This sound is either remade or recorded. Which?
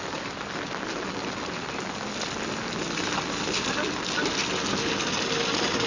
recorded